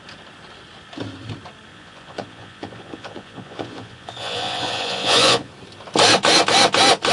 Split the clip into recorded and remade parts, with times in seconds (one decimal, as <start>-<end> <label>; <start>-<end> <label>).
0.0-1.7 recorded; 1.7-5.5 remade; 5.5-7.1 recorded